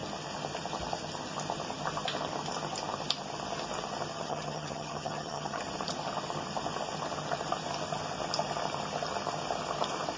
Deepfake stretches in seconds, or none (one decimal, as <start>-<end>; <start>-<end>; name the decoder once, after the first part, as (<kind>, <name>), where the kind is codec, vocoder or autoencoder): 4.1-5.6 (vocoder, HiFi-GAN)